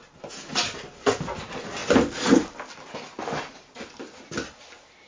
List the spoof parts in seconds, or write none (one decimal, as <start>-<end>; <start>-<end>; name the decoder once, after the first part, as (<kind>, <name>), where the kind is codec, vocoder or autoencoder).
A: none